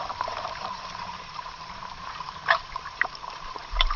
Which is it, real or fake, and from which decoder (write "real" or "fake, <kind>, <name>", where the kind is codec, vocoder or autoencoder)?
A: fake, vocoder, BigVGAN v2